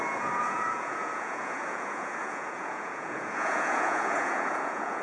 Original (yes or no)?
no